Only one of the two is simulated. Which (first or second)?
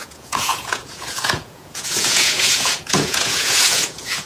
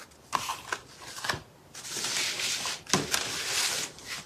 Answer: first